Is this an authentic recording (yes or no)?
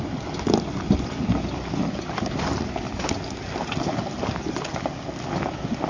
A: yes